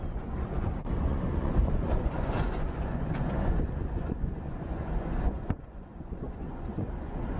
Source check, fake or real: fake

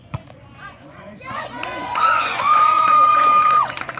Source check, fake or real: fake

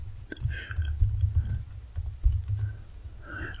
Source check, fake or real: real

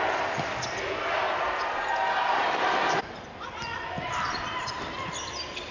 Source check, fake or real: real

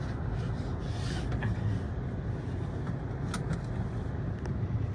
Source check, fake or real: real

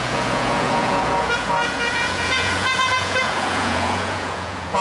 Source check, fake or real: fake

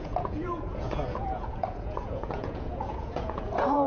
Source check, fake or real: fake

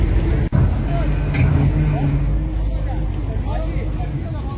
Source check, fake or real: real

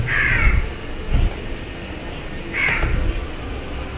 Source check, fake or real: real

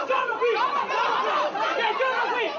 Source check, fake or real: real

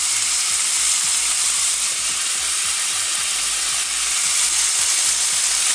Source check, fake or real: real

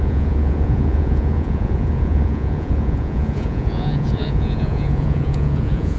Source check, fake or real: fake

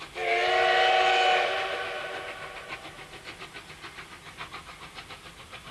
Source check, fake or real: real